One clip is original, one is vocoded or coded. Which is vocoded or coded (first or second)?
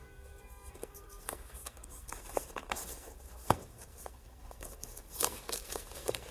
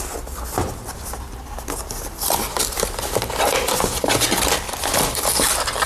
first